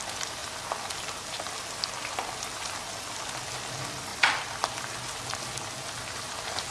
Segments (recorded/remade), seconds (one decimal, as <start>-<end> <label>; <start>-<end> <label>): 0.0-4.1 recorded; 4.1-5.9 remade; 5.9-6.7 recorded